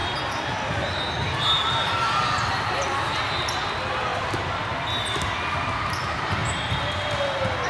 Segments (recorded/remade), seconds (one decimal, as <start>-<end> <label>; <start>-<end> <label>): 0.0-3.6 remade; 3.6-4.1 recorded; 4.1-5.3 remade; 5.3-6.4 recorded; 6.4-7.1 remade; 7.1-7.7 recorded